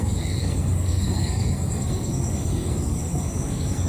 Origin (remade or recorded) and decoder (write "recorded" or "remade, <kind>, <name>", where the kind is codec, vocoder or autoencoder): remade, codec, SNAC